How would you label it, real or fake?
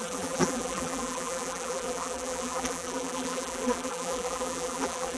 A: fake